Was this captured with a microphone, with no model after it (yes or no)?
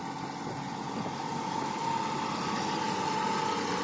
yes